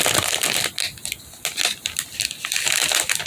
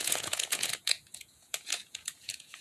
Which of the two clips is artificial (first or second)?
second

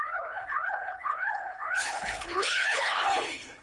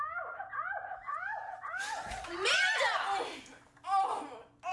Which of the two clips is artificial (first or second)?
first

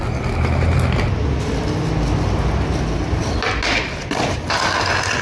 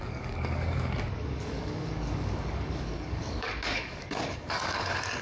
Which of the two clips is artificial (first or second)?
second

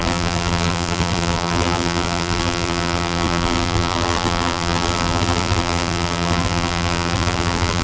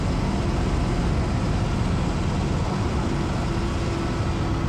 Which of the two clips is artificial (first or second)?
first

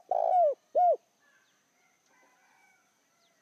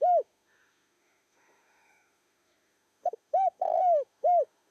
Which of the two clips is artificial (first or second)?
second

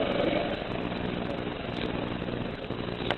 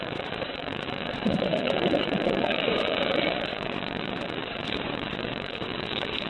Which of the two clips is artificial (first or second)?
second